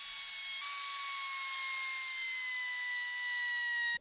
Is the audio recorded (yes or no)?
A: yes